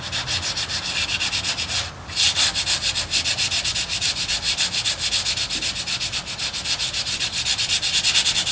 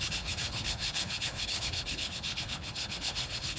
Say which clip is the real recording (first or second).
first